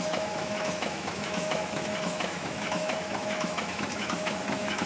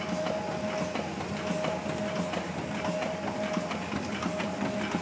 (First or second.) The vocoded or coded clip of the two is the first